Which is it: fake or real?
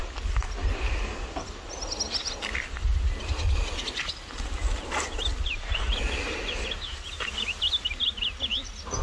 real